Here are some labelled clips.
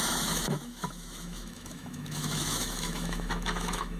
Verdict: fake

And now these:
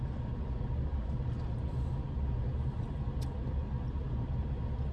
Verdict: real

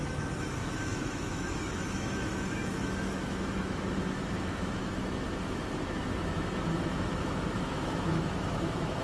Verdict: fake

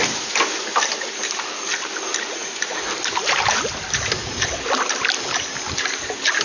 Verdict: real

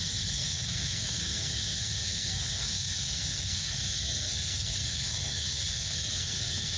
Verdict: fake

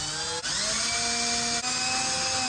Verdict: real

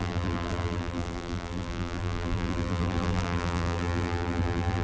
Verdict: fake